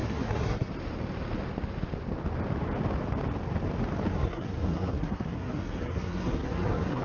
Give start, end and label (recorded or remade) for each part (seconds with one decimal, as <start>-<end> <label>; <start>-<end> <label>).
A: 0.0-0.7 remade; 0.7-4.1 recorded; 4.1-7.0 remade